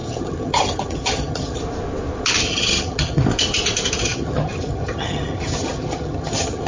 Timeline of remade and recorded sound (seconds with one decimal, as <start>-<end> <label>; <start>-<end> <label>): 0.0-1.6 remade; 1.6-2.4 recorded; 2.4-3.2 remade; 3.2-4.0 recorded; 4.0-6.7 remade